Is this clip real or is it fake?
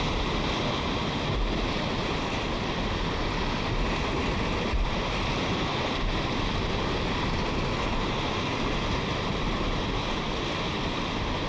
real